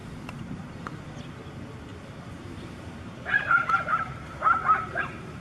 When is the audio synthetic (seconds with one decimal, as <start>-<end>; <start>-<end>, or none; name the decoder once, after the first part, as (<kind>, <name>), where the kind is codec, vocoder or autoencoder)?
0.0-0.7 (vocoder, BigVGAN v2); 1.9-5.4